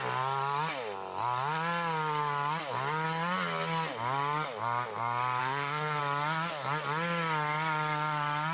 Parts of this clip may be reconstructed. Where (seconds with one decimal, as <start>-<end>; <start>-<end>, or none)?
5.4-6.0